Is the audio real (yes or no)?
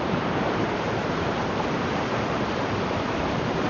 no